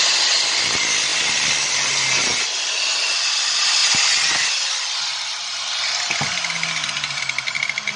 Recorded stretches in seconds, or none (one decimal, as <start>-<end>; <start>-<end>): 0.0-8.0